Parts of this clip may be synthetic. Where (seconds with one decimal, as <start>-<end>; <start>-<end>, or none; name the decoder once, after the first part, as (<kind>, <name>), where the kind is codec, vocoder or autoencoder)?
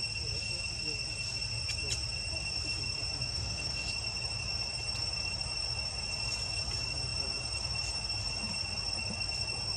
3.3-3.9 (autoencoder, DAC-VAE)